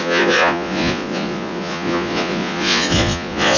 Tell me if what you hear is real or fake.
fake